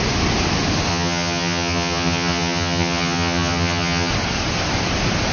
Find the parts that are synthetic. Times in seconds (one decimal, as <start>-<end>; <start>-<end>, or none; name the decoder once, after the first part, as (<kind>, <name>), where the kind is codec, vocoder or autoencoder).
0.9-4.1 (vocoder, HiFi-GAN)